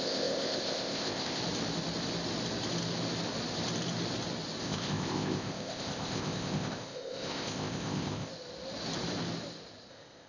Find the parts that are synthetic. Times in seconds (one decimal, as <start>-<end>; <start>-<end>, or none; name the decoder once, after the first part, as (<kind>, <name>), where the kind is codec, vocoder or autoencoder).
0.0-1.4 (codec, ZipCodec); 4.6-8.3; 9.9-10.3